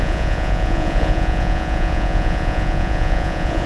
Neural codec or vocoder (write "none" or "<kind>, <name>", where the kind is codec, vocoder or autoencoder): vocoder, Vocos